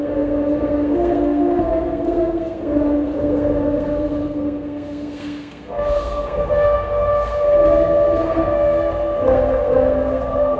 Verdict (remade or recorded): remade